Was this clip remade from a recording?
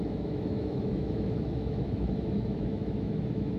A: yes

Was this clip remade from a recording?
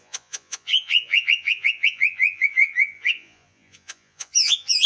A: yes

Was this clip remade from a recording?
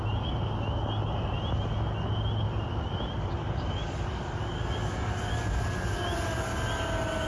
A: no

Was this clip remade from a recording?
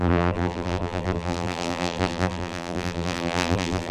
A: yes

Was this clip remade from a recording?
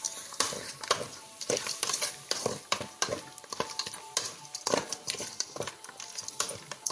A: no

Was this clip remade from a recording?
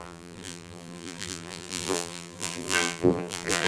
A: yes